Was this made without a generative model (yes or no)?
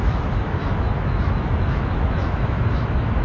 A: no